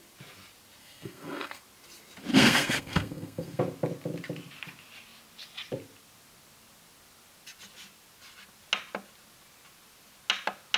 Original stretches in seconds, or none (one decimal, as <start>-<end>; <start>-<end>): 0.0-0.8; 1.6-2.3; 3.6-10.8